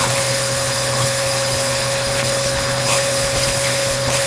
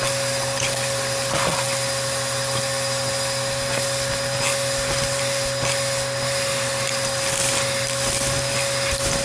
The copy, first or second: first